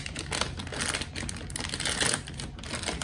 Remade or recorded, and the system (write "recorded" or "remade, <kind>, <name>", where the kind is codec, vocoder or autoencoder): recorded